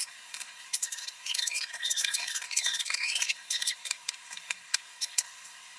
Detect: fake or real fake